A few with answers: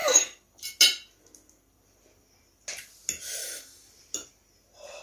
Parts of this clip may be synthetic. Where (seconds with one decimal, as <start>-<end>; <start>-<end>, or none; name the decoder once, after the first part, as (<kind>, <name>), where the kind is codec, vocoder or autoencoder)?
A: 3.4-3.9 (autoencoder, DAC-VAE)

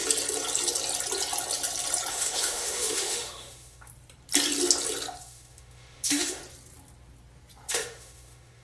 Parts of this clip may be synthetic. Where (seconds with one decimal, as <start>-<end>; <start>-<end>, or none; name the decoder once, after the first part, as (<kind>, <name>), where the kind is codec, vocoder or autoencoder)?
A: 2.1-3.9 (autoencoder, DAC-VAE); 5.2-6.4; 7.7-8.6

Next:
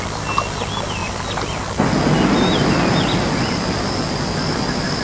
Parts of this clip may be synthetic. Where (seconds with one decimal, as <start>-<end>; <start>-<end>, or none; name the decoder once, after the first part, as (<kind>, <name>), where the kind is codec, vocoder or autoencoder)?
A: none